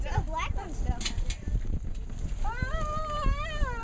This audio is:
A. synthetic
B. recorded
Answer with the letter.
B